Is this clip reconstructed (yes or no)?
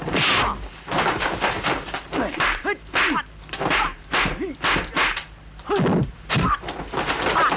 no